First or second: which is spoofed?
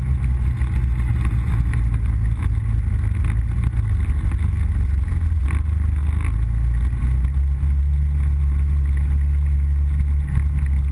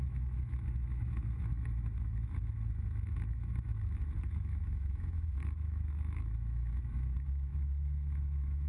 second